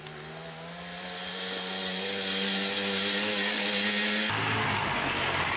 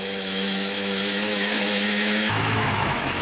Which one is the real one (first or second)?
first